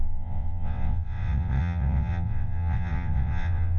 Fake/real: fake